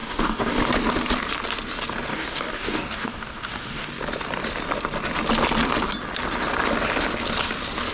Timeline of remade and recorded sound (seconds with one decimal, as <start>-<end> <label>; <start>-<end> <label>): 0.0-0.6 remade; 0.6-2.1 recorded; 2.1-3.9 remade; 3.9-7.9 recorded